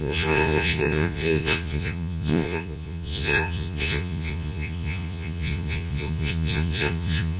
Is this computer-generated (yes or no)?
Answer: yes